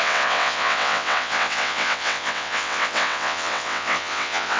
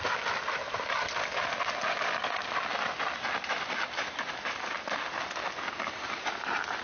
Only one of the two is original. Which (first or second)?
second